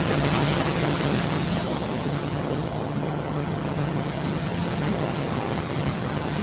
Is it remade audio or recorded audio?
remade